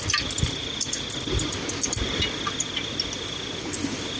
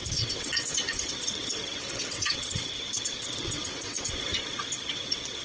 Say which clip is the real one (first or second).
first